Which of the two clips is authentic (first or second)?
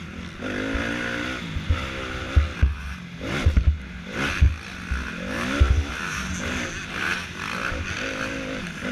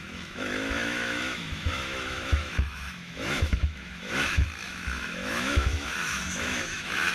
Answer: first